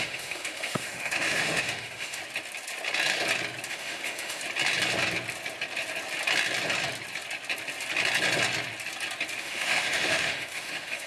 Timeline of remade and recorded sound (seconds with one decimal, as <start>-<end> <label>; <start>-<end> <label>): 0.0-2.2 remade; 2.2-3.7 recorded; 3.7-4.4 remade; 4.4-9.4 recorded; 9.4-11.1 remade